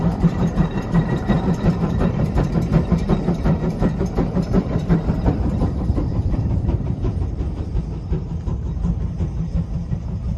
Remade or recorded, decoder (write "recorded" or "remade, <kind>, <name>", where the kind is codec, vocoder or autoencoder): remade, vocoder, BigVGAN v2